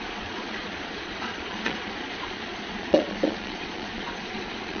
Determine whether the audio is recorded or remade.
remade